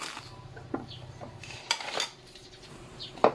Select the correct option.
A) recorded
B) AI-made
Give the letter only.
A